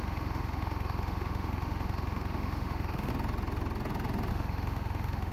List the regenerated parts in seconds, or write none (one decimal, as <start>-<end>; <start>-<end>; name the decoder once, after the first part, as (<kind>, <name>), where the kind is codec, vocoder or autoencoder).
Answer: 0.0-3.1 (autoencoder, DAC-VAE); 4.3-5.3